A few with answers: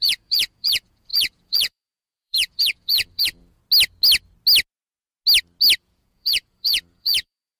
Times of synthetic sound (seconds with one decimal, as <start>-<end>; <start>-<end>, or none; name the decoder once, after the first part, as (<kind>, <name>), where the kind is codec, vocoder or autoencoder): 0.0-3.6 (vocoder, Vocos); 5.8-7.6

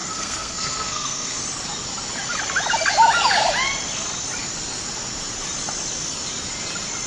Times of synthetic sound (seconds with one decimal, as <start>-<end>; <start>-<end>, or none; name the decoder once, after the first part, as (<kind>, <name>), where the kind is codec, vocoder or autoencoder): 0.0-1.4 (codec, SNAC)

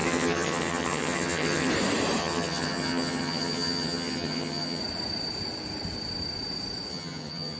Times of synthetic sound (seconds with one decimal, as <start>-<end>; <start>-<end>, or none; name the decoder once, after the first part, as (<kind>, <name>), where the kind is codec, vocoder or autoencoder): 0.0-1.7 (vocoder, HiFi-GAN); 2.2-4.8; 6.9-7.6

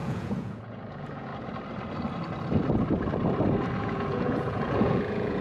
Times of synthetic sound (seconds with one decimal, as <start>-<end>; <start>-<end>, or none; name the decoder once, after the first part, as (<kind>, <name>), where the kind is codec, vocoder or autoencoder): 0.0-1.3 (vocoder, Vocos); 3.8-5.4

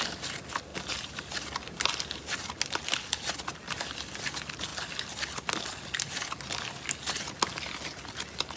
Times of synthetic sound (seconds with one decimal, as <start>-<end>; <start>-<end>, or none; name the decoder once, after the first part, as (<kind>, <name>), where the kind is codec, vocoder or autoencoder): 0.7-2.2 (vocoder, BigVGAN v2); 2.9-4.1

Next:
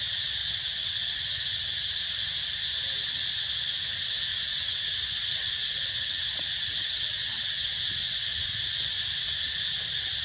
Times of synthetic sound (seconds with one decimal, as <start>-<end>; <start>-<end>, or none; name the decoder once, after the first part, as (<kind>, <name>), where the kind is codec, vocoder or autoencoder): 0.4-1.4 (vocoder, WaveNeXt); 4.3-7.8